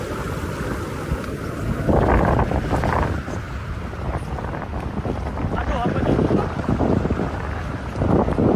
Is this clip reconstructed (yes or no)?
no